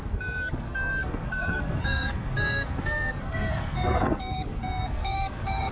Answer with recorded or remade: remade